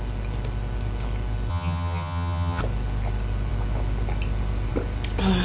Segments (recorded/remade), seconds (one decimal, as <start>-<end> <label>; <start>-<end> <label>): 0.0-1.5 recorded; 1.5-2.6 remade; 2.6-5.4 recorded

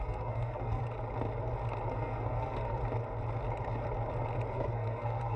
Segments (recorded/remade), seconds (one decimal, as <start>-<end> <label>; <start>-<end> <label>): 0.0-0.8 remade; 0.8-1.9 recorded; 1.9-2.8 remade; 2.8-4.5 recorded; 4.5-5.4 remade

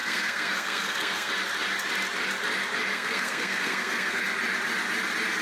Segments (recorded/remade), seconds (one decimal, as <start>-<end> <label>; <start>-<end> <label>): 0.0-1.3 remade; 1.3-2.9 recorded; 2.9-4.2 remade; 4.2-5.4 recorded

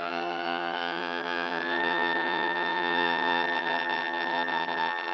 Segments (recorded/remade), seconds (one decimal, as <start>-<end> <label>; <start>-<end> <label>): 0.0-5.1 remade

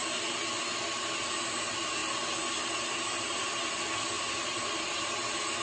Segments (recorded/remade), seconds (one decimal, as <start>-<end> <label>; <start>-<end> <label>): 0.0-5.6 recorded